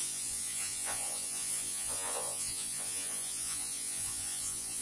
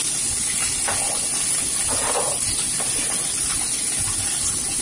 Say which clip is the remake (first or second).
first